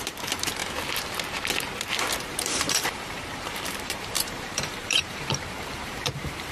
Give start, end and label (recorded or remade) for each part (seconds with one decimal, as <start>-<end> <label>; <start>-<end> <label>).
0.0-0.6 remade; 0.6-2.2 recorded; 2.2-6.5 remade

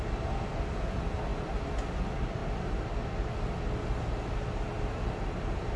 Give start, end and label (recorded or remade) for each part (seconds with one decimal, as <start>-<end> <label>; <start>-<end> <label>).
0.0-5.8 recorded

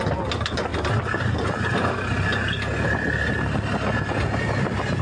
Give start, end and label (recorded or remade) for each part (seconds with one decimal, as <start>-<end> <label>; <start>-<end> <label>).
0.0-5.0 recorded